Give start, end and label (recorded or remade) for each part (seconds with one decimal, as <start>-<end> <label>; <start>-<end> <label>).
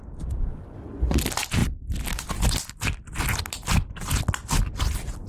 0.0-5.3 recorded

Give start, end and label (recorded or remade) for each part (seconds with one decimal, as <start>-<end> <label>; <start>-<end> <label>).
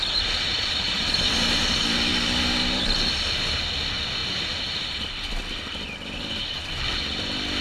0.0-0.5 recorded; 0.5-1.1 remade; 1.1-4.2 recorded; 4.2-6.2 remade; 6.2-7.6 recorded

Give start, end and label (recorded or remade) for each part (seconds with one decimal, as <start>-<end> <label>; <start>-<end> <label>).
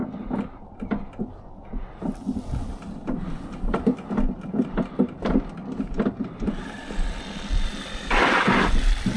0.0-1.9 recorded; 1.9-9.2 remade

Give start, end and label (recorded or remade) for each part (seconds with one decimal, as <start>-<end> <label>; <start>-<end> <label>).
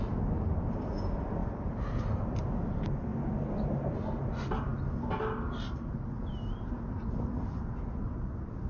0.0-1.4 recorded; 1.4-2.3 remade; 2.3-3.1 recorded; 3.1-4.0 remade; 4.0-8.7 recorded